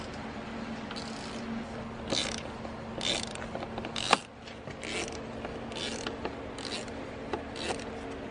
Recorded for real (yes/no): yes